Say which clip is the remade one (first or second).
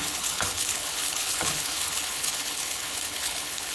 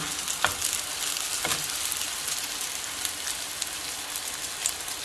first